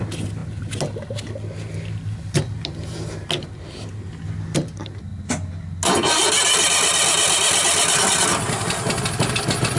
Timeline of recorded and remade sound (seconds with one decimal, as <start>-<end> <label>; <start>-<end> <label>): 0.0-9.8 recorded